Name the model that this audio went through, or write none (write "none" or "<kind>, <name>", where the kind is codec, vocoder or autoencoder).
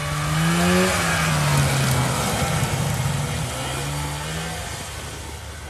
none